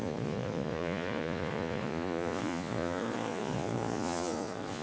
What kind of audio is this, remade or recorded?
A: remade